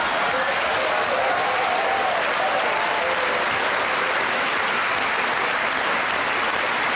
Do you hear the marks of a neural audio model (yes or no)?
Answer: no